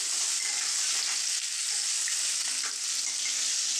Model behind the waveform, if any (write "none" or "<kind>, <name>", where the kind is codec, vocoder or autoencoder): none